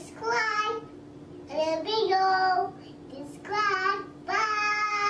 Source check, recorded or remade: recorded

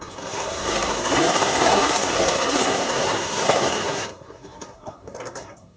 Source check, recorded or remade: remade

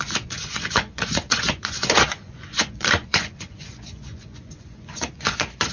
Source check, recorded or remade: remade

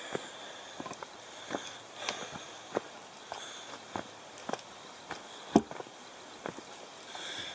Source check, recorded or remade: recorded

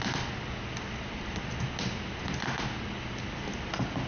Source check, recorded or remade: recorded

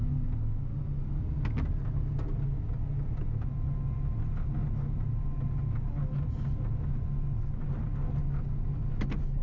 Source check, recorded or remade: recorded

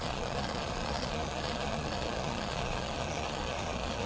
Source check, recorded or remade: remade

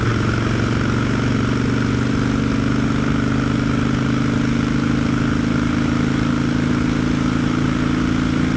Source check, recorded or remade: recorded